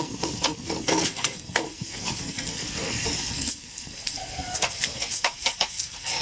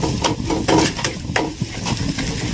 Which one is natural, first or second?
second